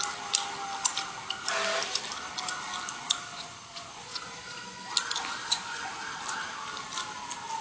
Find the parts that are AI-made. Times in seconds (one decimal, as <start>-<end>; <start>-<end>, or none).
3.3-4.9; 5.4-6.0